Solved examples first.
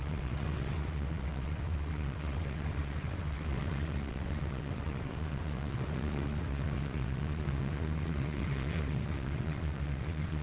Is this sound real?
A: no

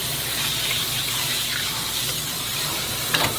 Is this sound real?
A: no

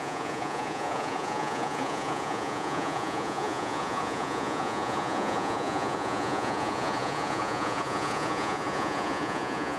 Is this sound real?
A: no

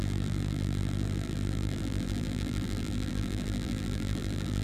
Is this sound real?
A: no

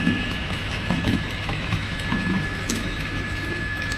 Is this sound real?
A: no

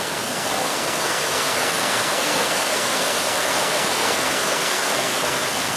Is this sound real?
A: no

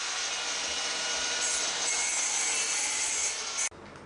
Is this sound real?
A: yes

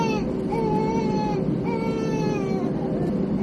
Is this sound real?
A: yes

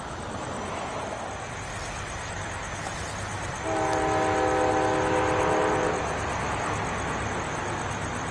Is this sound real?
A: yes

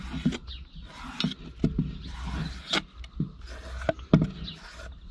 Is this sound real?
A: yes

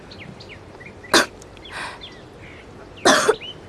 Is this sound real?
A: yes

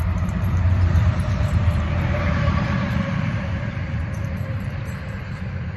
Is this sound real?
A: no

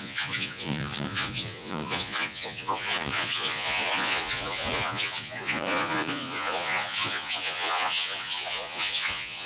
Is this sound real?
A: no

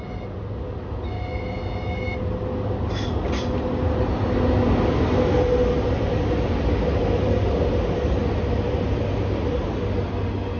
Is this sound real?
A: yes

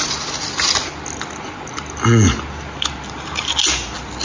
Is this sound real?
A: yes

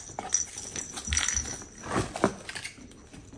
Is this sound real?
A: yes